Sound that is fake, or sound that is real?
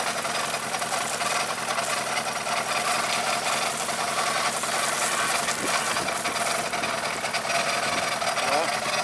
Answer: real